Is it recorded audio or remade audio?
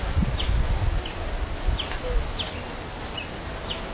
recorded